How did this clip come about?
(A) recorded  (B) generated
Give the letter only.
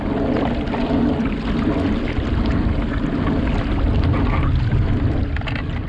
A